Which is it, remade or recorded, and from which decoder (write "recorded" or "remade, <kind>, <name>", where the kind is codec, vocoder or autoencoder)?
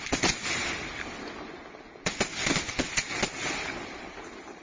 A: recorded